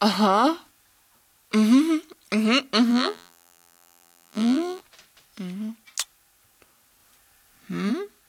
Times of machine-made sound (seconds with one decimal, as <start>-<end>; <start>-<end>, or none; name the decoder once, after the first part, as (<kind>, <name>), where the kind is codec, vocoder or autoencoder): 2.9-4.8 (vocoder, BigVGAN v2)